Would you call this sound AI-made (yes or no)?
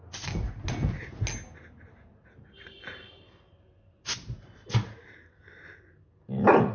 no